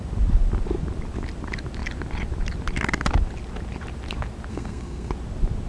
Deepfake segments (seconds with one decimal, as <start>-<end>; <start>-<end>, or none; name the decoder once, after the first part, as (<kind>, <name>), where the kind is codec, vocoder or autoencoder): 4.5-5.1 (codec, SNAC)